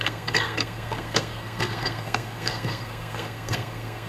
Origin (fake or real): fake